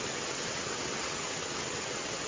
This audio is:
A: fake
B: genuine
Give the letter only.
A